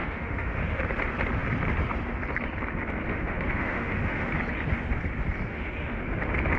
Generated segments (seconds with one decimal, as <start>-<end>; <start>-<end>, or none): 0.0-0.8; 3.1-4.3; 5.5-6.0